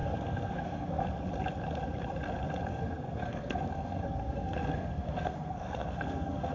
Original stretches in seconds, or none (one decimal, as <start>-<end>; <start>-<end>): 1.0-2.7